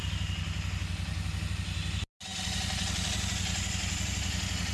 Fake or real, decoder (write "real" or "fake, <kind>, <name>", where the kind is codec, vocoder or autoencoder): real